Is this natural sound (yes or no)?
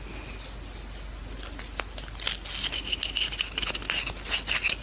yes